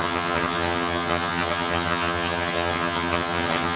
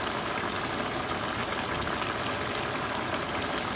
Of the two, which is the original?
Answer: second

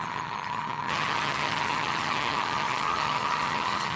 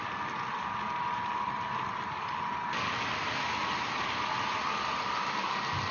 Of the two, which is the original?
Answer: second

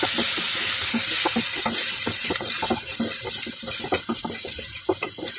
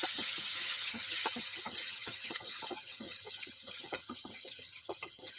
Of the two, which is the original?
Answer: first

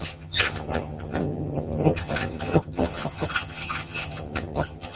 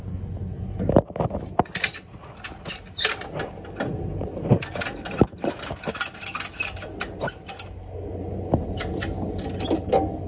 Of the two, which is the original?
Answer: second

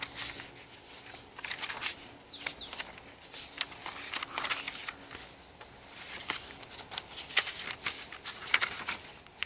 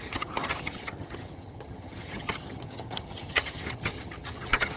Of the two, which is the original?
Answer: first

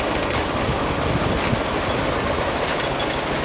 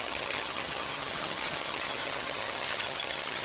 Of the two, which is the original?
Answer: first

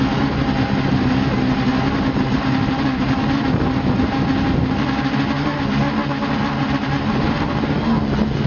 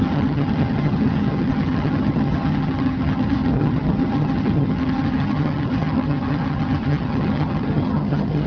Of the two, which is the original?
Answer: first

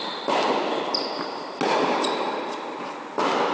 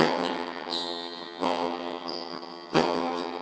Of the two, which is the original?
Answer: first